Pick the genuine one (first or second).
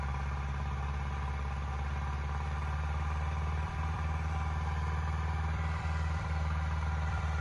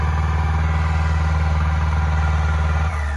second